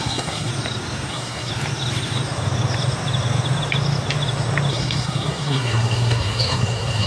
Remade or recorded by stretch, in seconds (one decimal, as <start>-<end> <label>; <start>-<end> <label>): 0.0-0.5 remade; 0.5-1.1 recorded; 1.1-1.5 remade; 1.5-4.7 recorded; 4.7-7.1 remade